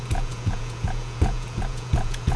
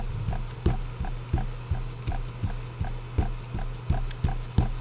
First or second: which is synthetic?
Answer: first